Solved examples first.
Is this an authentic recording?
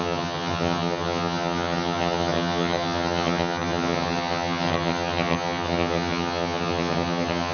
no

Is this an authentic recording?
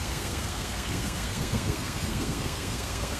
no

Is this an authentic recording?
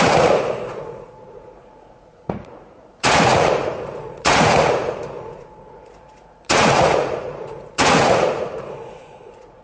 no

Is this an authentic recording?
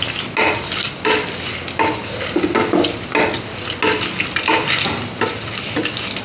yes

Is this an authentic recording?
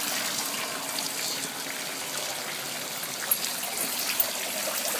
yes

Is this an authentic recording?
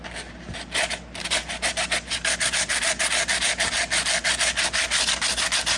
yes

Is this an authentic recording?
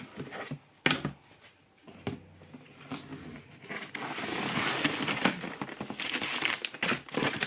yes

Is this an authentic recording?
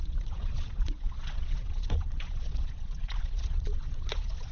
no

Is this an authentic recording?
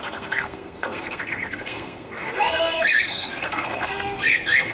no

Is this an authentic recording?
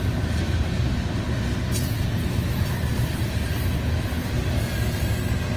yes